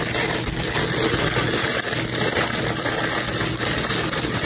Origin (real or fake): real